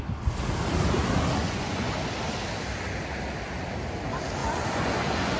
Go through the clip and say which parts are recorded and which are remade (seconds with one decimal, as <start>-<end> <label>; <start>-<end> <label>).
0.0-1.4 recorded; 1.4-1.9 remade; 1.9-4.4 recorded; 4.4-5.4 remade